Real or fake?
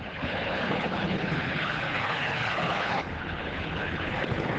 fake